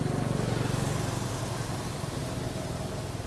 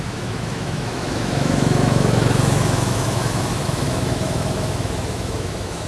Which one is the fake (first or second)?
second